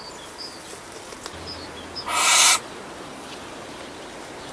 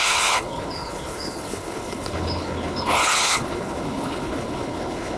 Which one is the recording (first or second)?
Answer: first